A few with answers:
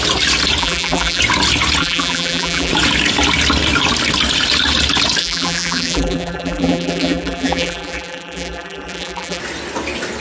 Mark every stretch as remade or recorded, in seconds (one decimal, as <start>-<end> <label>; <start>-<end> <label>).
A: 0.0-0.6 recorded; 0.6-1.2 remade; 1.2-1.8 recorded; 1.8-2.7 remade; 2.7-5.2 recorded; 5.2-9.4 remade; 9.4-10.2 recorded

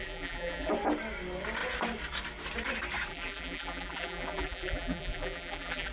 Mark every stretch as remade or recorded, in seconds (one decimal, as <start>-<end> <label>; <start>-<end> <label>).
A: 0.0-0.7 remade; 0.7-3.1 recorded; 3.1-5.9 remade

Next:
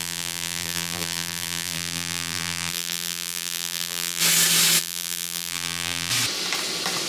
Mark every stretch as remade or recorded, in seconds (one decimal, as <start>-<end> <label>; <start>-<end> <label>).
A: 0.0-4.2 remade; 4.2-4.8 recorded; 4.8-6.1 remade; 6.1-7.1 recorded

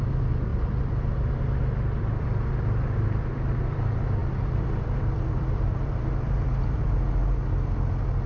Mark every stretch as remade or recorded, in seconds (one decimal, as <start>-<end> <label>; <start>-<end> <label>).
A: 0.0-7.2 remade; 7.2-8.3 recorded

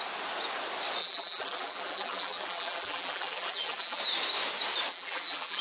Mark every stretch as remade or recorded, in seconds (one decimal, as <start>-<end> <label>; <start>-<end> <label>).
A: 0.0-1.0 recorded; 1.0-4.0 remade; 4.0-4.9 recorded; 4.9-5.6 remade